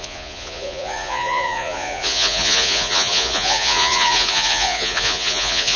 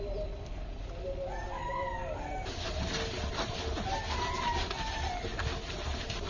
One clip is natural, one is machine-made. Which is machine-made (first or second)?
first